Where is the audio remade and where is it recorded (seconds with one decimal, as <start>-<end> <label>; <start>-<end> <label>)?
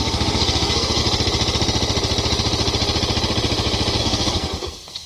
0.0-1.0 remade; 1.0-4.0 recorded; 4.0-5.1 remade